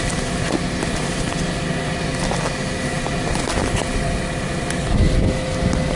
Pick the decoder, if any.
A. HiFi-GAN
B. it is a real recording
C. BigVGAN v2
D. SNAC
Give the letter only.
B